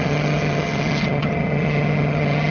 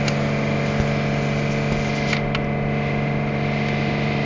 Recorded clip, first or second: second